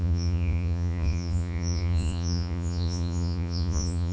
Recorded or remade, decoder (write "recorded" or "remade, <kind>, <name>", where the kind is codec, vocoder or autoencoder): remade, vocoder, Vocos